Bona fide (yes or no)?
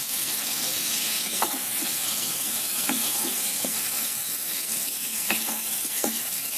no